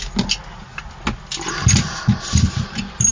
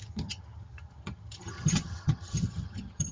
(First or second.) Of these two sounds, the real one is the first